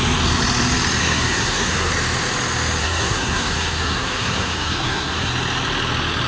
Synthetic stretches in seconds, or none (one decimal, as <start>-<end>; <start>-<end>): 1.0-1.9; 2.8-5.3